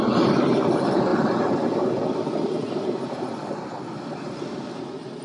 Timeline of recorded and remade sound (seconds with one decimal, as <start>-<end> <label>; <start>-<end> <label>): 0.0-1.1 remade; 1.1-2.6 recorded; 2.6-3.3 remade; 3.3-3.9 recorded; 3.9-5.2 remade

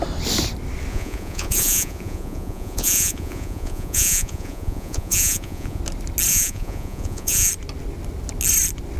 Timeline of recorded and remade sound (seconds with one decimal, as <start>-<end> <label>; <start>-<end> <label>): 0.0-0.9 recorded; 0.9-5.8 remade; 5.8-6.3 recorded; 6.3-7.5 remade; 7.5-9.0 recorded

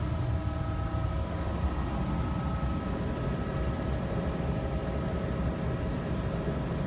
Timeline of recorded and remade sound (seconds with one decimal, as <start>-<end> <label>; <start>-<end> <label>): 0.0-6.9 recorded